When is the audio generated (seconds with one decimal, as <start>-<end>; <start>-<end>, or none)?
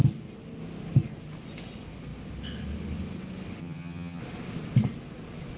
3.6-4.2